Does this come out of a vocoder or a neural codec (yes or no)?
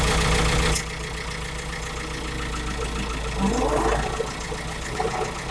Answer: no